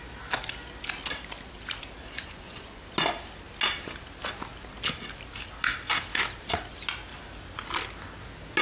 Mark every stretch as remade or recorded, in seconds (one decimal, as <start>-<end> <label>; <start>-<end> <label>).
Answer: 0.0-2.0 recorded; 2.0-2.8 remade; 2.8-8.6 recorded